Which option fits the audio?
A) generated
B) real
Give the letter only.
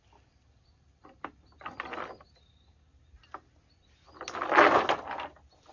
B